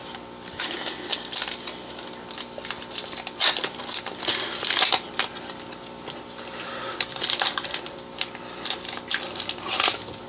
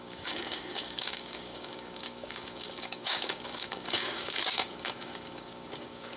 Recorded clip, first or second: first